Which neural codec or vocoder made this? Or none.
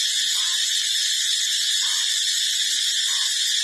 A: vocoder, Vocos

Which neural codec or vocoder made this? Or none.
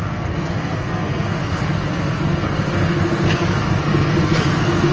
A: codec, SNAC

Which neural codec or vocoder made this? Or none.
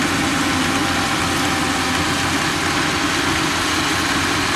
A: none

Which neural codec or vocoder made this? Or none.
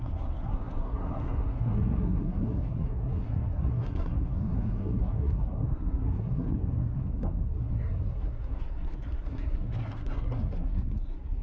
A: codec, SNAC